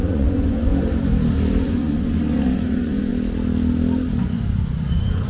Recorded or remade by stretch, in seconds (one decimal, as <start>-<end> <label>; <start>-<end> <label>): 0.0-0.7 remade; 0.7-1.6 recorded; 1.6-3.1 remade; 3.1-4.2 recorded; 4.2-5.3 remade